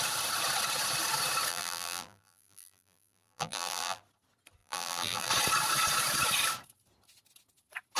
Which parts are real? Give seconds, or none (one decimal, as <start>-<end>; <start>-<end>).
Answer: 0.0-1.5; 4.0-4.6; 5.3-8.0